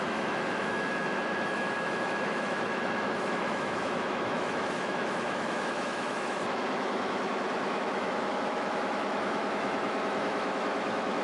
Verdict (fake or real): fake